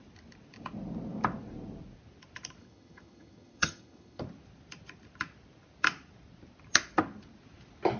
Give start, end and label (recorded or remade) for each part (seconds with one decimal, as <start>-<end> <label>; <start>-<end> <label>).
0.0-2.6 recorded; 2.6-4.2 remade; 4.2-8.0 recorded